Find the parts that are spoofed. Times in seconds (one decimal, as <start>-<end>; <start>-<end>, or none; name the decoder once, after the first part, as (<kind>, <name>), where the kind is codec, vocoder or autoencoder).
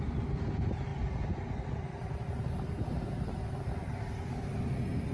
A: none